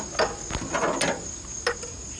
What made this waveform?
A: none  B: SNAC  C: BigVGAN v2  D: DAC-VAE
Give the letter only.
A